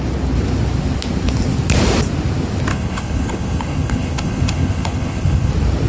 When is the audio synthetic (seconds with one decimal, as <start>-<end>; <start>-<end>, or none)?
2.7-5.5